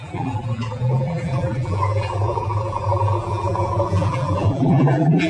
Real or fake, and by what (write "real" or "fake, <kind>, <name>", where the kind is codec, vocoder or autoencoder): fake, vocoder, BigVGAN v2